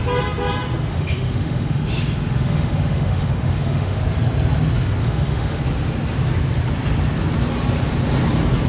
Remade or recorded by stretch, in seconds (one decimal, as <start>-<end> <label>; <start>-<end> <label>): 0.0-0.9 recorded; 0.9-4.0 remade; 4.0-5.0 recorded; 5.0-5.6 remade; 5.6-8.7 recorded